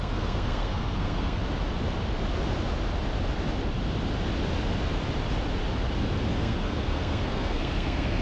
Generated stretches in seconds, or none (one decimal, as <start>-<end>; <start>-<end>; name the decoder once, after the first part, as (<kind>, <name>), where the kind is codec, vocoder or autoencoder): 0.0-1.4 (codec, SNAC); 6.3-8.2